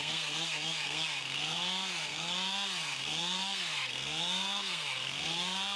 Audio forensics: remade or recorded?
remade